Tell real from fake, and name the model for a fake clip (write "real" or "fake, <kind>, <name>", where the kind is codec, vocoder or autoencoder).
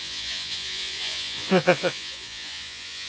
fake, vocoder, Vocos